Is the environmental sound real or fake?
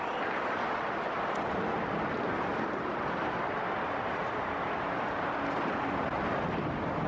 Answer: fake